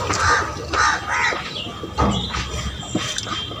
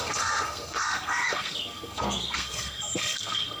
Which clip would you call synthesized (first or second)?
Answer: second